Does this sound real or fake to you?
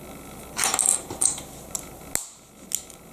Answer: real